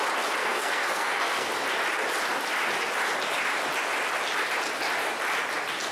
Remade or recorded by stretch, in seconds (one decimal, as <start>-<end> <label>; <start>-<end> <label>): 0.0-0.4 recorded; 0.4-1.5 remade; 1.5-5.9 recorded